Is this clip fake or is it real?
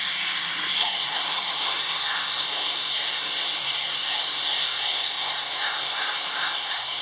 fake